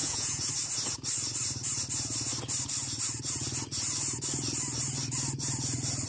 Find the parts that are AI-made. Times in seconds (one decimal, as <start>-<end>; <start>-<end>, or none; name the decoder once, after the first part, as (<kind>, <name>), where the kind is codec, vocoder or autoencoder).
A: 0.0-0.5 (vocoder, Vocos)